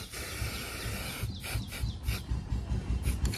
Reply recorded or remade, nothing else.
recorded